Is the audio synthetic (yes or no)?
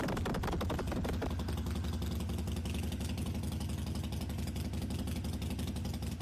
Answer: no